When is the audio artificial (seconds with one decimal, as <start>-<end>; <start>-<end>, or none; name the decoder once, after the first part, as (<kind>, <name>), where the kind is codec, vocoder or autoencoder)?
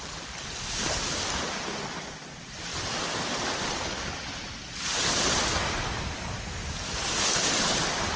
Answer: none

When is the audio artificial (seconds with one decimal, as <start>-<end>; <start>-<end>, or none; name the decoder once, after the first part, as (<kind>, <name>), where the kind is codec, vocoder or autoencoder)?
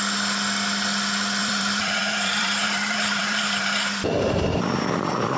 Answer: 1.4-4.6 (vocoder, BigVGAN v2)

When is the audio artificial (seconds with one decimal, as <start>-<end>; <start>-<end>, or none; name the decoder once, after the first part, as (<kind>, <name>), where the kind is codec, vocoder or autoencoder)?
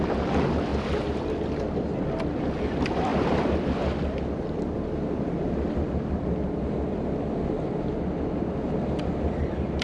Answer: 0.7-1.5 (vocoder, BigVGAN v2); 3.1-7.9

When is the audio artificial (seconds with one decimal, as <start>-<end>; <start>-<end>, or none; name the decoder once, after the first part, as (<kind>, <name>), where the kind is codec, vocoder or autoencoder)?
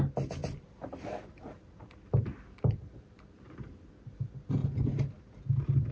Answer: 0.4-3.9 (vocoder, BigVGAN v2); 4.6-5.1